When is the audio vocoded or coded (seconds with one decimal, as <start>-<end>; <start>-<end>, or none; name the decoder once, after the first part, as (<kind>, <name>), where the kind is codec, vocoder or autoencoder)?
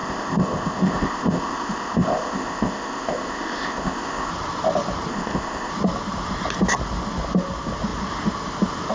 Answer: 0.0-4.3 (codec, ZipCodec); 5.1-5.7